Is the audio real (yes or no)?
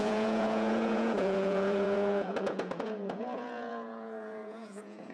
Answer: no